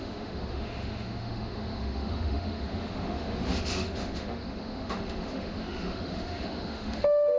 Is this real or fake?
fake